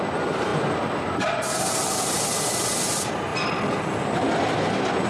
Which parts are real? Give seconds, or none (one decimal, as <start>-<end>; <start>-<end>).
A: 0.0-5.1